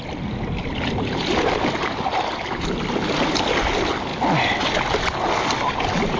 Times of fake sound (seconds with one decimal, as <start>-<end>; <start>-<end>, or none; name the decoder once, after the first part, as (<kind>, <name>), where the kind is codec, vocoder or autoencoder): none